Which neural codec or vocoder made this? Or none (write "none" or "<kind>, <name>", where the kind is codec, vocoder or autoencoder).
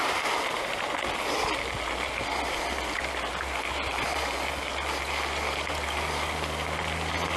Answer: none